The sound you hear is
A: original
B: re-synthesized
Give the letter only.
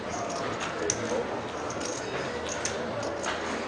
A